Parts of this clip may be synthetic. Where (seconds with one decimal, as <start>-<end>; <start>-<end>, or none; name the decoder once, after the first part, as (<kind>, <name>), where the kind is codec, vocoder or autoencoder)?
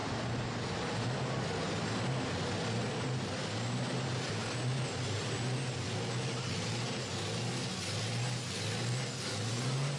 none